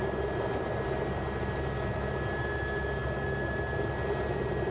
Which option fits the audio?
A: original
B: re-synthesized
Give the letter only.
A